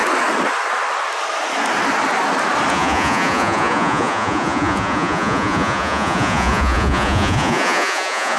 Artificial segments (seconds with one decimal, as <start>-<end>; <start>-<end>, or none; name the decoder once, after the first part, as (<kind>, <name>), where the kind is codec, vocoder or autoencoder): 2.7-8.4 (vocoder, Vocos)